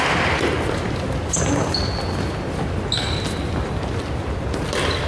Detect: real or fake real